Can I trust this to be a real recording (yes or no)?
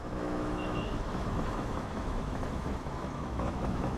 no